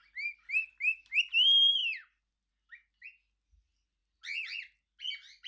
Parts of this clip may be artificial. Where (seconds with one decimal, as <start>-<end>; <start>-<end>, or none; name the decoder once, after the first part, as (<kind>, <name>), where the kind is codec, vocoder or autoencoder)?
none